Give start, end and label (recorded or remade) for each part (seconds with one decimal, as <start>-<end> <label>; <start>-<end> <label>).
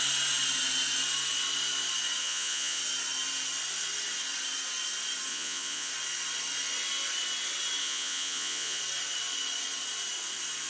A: 0.0-2.2 recorded; 2.2-2.8 remade; 2.8-5.3 recorded; 5.3-5.9 remade; 5.9-7.8 recorded; 7.8-8.8 remade; 8.8-10.7 recorded